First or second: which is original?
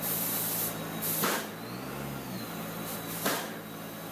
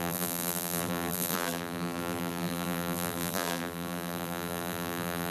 first